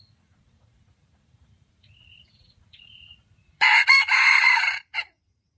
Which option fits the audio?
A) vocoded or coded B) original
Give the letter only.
A